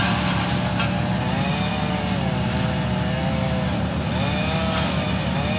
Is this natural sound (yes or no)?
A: yes